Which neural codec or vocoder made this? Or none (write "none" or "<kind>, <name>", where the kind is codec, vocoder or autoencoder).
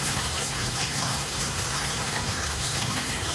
codec, SNAC